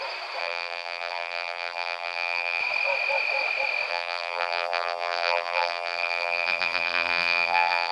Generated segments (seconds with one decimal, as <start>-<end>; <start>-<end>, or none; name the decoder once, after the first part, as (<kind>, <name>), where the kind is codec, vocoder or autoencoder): 0.4-2.6 (vocoder, BigVGAN v2); 3.9-7.9